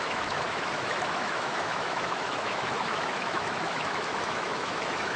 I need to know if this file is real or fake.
fake